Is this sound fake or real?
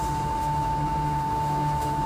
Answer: fake